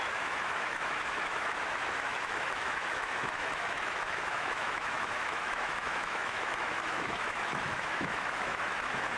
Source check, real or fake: fake